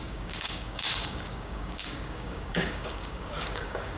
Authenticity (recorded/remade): remade